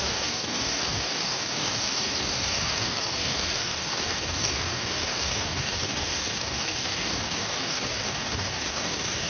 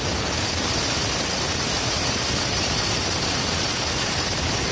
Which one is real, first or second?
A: second